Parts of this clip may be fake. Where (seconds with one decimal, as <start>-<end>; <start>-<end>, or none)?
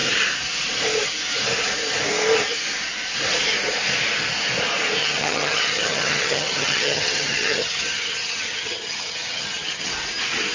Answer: 5.0-9.9